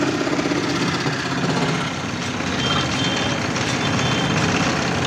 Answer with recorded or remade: recorded